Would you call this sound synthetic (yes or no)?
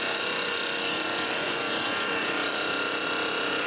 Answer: yes